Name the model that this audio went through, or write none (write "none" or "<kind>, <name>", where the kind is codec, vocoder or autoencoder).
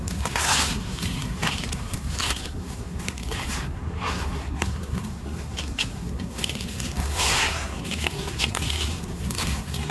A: codec, SNAC